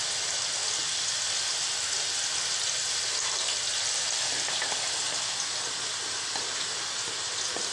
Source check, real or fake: real